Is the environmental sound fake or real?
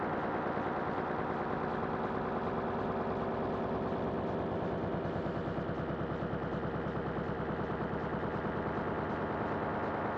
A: real